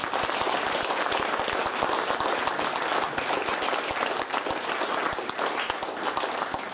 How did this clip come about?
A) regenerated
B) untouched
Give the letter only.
B